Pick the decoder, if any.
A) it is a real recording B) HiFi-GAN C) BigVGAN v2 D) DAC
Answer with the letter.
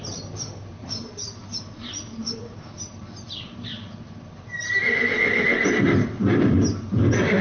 C